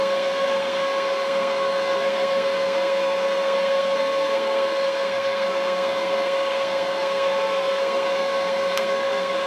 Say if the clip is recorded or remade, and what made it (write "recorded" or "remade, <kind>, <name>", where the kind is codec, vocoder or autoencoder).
remade, codec, SNAC